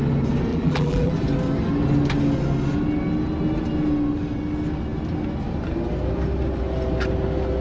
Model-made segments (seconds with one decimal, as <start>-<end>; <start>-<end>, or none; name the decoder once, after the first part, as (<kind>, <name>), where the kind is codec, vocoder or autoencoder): 0.5-1.1 (vocoder, BigVGAN v2)